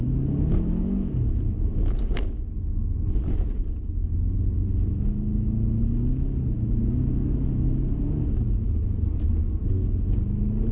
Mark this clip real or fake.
real